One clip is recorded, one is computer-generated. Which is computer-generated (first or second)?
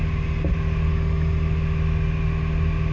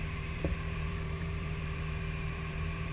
second